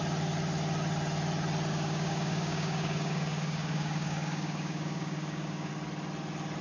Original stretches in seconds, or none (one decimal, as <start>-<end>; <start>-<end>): 0.0-1.7; 5.7-6.6